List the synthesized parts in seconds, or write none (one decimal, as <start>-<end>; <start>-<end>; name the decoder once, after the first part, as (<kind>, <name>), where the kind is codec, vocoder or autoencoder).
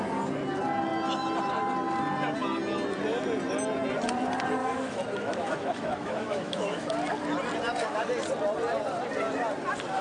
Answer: 4.6-6.9 (autoencoder, DAC-VAE)